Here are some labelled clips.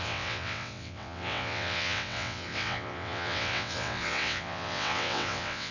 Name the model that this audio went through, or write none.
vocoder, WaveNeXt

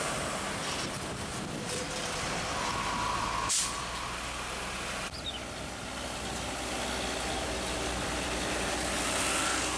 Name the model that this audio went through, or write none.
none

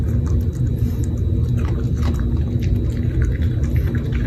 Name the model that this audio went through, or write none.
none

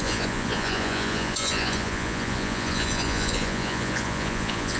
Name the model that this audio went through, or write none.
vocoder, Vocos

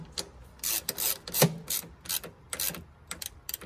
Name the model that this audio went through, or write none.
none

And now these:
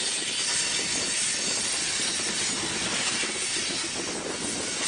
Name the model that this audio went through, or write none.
none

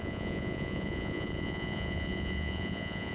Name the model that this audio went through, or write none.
vocoder, Vocos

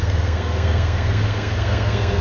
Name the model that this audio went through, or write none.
codec, SNAC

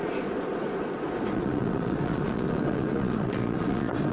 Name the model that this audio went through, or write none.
vocoder, Vocos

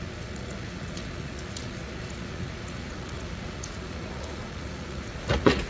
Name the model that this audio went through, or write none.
vocoder, Vocos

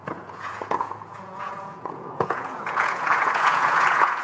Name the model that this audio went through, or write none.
vocoder, Vocos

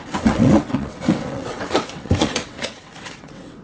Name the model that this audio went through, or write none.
vocoder, WaveNeXt